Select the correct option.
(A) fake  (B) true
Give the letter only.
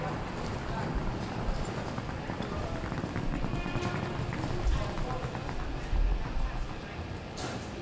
B